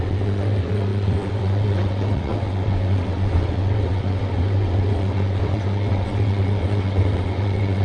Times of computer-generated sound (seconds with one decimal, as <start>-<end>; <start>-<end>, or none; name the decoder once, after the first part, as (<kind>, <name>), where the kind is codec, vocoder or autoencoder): 0.0-7.8 (vocoder, WaveNeXt)